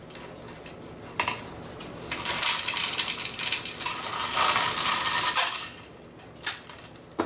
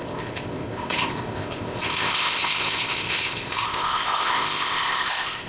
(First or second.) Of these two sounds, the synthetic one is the second